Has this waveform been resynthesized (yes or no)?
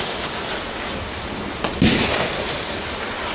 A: no